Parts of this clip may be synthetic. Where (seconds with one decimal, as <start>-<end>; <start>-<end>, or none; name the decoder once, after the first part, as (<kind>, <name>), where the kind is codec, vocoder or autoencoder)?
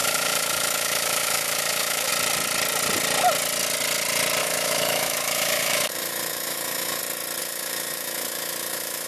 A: 0.0-2.1 (autoencoder, DAC-VAE); 4.4-7.0; 7.4-9.1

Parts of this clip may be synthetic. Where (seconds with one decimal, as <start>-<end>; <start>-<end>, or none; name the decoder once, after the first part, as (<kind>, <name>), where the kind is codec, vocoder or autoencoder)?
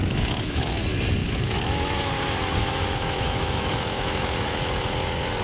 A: 0.0-0.7 (autoencoder, DAC-VAE); 1.2-2.1; 2.6-4.8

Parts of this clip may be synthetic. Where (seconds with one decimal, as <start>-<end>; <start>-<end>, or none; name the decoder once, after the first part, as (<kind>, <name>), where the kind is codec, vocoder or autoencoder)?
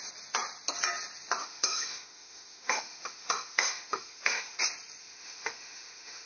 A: 1.4-4.6 (autoencoder, DAC-VAE); 5.0-6.3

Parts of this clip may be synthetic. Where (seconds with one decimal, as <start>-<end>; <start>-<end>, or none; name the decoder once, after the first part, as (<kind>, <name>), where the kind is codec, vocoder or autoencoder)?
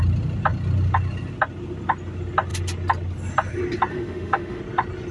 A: 3.9-4.6 (autoencoder, DAC-VAE)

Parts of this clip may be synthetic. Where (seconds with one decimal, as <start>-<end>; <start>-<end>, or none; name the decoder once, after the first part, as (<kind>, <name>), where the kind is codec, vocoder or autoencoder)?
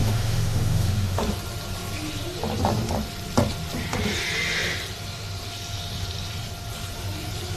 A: 0.0-1.2 (autoencoder, DAC-VAE)